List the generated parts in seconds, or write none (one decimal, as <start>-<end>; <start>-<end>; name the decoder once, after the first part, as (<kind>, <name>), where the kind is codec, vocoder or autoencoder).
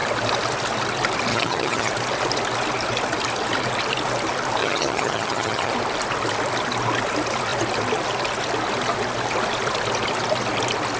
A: 1.3-1.9 (vocoder, HiFi-GAN); 4.6-5.7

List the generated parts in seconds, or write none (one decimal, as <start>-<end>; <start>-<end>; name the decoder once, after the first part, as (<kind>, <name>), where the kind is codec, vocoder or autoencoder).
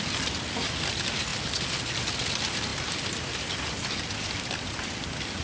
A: 0.0-1.3 (vocoder, BigVGAN v2); 2.1-5.4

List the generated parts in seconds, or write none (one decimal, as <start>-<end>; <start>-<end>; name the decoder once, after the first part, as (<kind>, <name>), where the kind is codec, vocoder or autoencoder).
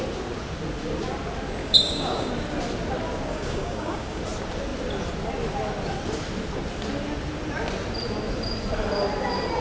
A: 1.6-2.3 (codec, DAC); 3.3-4.2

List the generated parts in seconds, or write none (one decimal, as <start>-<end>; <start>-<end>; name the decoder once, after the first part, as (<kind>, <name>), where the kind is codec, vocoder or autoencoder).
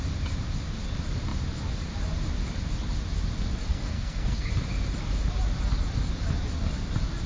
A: 3.7-4.5 (codec, SNAC)